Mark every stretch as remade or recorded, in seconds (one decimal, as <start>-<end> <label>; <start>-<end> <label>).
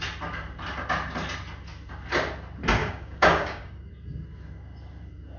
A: 0.0-2.8 recorded; 2.8-3.9 remade; 3.9-5.4 recorded